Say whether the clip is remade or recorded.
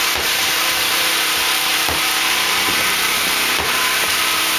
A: remade